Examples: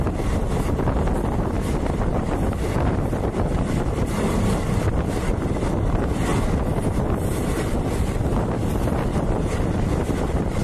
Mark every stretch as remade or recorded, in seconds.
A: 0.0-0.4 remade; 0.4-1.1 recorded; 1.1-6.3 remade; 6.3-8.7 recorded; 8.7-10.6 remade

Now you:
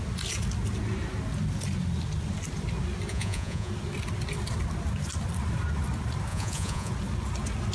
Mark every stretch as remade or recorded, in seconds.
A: 0.0-3.1 recorded; 3.1-3.7 remade; 3.7-6.3 recorded; 6.3-6.9 remade; 6.9-7.7 recorded

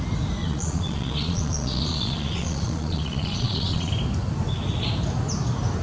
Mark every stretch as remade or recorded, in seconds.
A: 0.0-0.4 recorded; 0.4-3.9 remade; 3.9-5.8 recorded

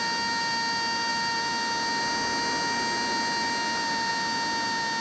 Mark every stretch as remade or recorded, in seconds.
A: 0.0-5.0 recorded

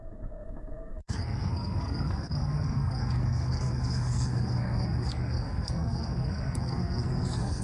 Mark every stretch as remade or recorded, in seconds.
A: 0.0-7.6 remade

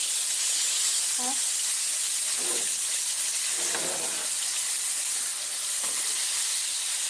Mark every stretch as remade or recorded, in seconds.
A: 0.0-0.4 recorded; 0.4-1.0 remade; 1.0-2.3 recorded; 2.3-3.0 remade; 3.0-7.1 recorded

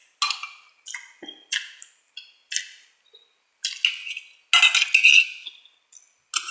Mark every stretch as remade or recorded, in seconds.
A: 0.0-6.5 recorded